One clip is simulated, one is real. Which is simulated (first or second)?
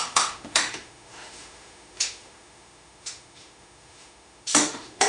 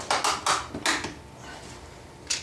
first